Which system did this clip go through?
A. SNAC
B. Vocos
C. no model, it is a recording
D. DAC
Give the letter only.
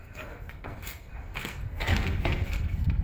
A